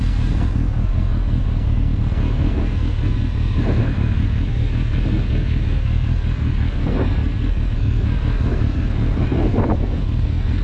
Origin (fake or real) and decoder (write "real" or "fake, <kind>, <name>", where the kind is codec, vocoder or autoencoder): fake, codec, SNAC